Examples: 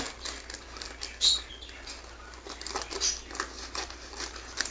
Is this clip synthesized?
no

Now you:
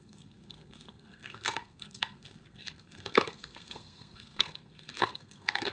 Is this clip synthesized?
yes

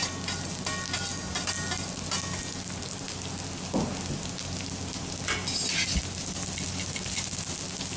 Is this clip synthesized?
no